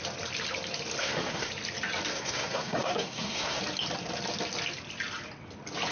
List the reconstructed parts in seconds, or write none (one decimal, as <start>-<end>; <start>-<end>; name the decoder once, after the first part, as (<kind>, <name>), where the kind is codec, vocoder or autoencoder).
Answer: 1.0-1.5 (codec, SNAC); 2.1-3.6